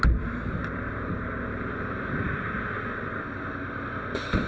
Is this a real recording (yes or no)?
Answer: yes